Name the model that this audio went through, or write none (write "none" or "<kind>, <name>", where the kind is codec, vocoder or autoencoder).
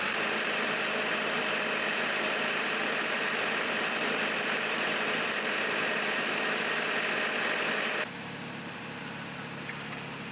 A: none